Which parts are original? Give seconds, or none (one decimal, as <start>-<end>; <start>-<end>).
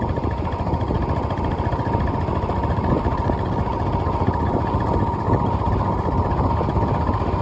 0.0-7.4